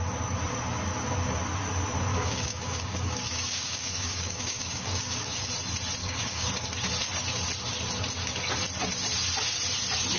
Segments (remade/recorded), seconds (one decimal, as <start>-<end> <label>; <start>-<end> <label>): 0.0-2.1 recorded; 2.1-5.5 remade; 5.5-6.0 recorded; 6.0-6.5 remade; 6.5-10.2 recorded

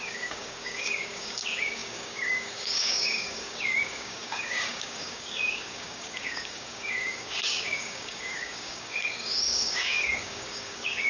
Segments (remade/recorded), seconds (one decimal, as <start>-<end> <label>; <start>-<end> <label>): 0.0-11.1 remade

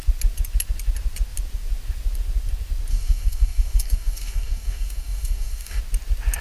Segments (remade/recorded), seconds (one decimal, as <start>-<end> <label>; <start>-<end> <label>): 0.0-2.9 recorded; 2.9-5.8 remade; 5.8-6.4 recorded

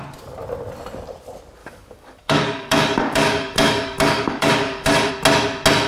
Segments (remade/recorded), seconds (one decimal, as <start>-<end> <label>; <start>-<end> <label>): 0.0-1.6 recorded; 1.6-5.1 remade; 5.1-5.9 recorded

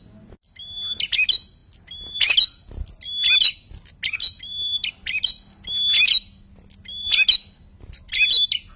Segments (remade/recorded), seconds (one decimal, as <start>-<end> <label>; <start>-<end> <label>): 0.0-8.8 recorded

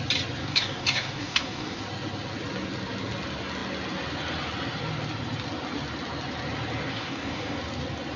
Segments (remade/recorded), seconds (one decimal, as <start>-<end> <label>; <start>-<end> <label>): 0.0-0.4 recorded; 0.4-1.8 remade; 1.8-6.9 recorded; 6.9-7.6 remade; 7.6-8.2 recorded

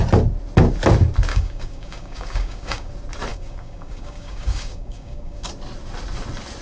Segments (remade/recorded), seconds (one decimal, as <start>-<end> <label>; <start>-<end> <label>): 0.0-1.3 recorded; 1.3-2.9 remade; 2.9-3.3 recorded; 3.3-5.5 remade; 5.5-6.6 recorded

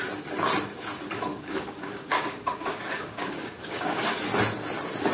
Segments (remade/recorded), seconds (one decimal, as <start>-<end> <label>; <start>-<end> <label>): 0.0-1.3 recorded; 1.3-4.2 remade; 4.2-5.1 recorded